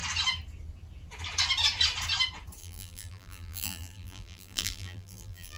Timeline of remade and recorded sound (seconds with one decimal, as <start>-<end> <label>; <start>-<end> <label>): 0.0-2.6 recorded; 2.6-5.6 remade

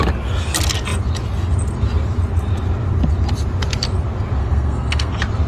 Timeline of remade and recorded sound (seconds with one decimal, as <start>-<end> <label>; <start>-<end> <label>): 0.0-4.4 recorded; 4.4-5.1 remade; 5.1-5.5 recorded

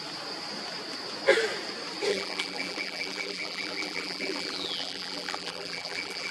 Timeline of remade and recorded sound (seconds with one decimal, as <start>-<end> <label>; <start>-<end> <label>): 0.0-2.1 recorded; 2.1-6.3 remade